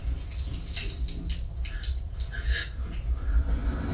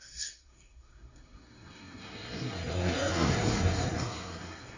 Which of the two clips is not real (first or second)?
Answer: second